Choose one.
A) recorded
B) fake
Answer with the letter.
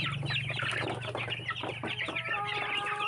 A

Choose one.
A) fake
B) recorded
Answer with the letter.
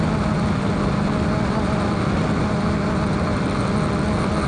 B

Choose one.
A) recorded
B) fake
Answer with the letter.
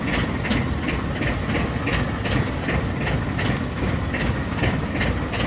A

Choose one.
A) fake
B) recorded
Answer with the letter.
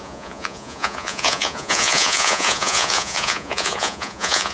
A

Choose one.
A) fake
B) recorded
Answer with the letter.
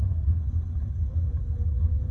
A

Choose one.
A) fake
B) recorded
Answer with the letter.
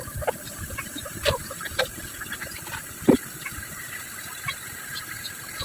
A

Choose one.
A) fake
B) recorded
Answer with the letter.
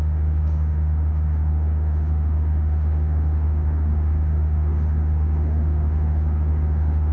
A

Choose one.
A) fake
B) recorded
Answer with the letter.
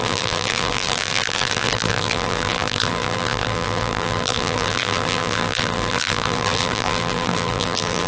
A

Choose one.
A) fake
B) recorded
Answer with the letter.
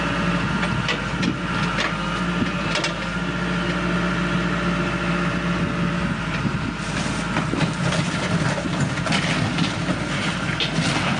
B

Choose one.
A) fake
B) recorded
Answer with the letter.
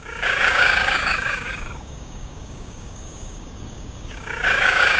A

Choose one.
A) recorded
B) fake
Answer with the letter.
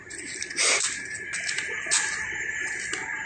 A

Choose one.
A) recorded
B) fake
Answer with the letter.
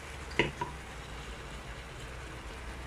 A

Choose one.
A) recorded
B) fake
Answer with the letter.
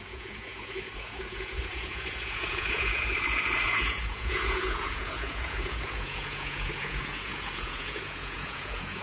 B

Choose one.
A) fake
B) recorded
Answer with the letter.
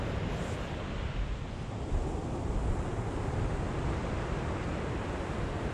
B